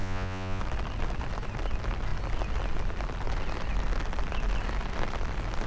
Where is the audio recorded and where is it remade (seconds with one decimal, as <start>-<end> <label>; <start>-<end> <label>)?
0.0-0.6 remade; 0.6-5.7 recorded